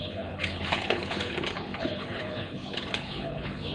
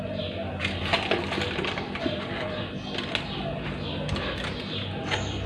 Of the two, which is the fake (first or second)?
first